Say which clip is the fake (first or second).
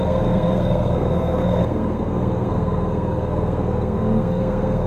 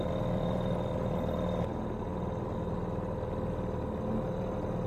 first